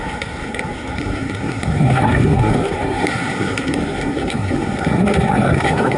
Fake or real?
fake